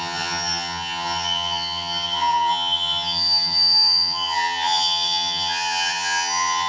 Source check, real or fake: fake